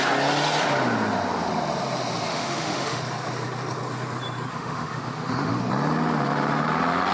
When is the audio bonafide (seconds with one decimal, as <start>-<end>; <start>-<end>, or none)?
0.0-2.3; 3.0-4.5; 5.6-7.1